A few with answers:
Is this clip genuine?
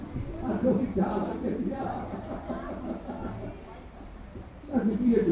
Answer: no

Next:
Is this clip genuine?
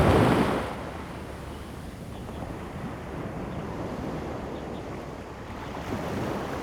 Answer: yes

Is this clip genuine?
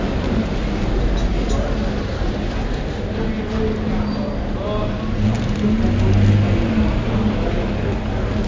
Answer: yes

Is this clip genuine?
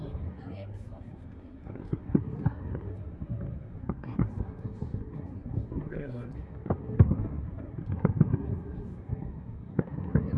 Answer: no